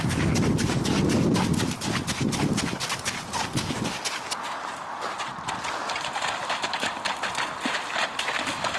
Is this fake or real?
real